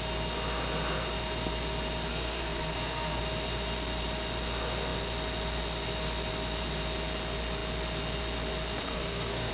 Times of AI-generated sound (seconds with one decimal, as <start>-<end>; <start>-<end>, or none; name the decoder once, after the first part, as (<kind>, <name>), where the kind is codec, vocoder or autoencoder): 2.1-3.2 (codec, SNAC); 8.8-9.5